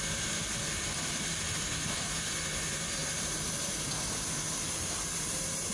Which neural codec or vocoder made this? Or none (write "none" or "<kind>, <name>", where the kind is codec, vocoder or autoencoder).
vocoder, BigVGAN v2